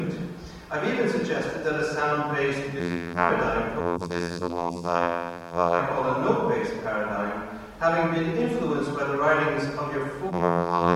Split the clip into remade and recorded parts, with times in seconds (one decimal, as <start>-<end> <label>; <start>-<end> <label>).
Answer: 0.0-2.8 recorded; 2.8-3.3 remade; 3.3-3.8 recorded; 3.8-5.8 remade; 5.8-10.3 recorded; 10.3-11.0 remade